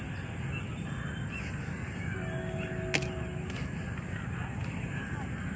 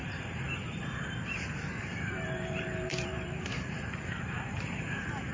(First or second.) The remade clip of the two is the second